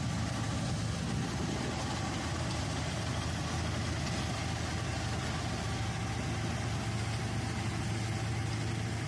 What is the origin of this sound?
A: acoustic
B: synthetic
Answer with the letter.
A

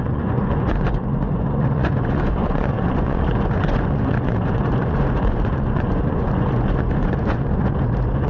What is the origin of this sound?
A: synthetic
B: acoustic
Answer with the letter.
A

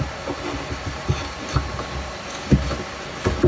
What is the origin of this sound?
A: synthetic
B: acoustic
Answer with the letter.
B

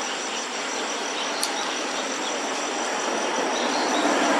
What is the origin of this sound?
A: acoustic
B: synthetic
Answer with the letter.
A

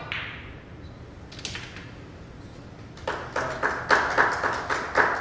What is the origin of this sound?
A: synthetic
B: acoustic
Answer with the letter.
B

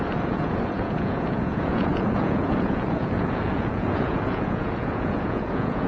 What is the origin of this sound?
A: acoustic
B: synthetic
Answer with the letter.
B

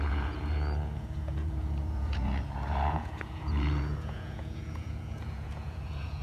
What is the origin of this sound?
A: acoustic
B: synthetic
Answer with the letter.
B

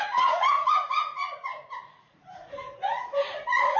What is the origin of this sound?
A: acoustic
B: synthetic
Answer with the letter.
B